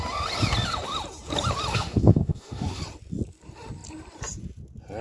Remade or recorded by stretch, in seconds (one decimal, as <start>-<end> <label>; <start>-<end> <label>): 0.0-1.7 recorded; 1.7-2.8 remade; 2.8-5.0 recorded